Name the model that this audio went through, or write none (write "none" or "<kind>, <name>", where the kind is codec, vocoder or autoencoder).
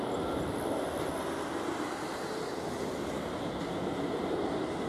none